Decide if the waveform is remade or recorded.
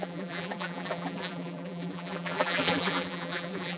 remade